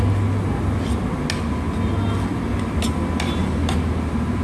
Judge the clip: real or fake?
real